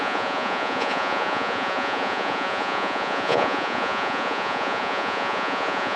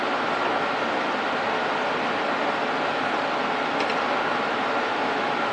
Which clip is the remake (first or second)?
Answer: first